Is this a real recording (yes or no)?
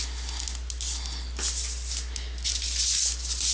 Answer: yes